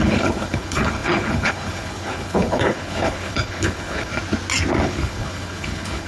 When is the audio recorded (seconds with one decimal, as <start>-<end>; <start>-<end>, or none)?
4.1-4.8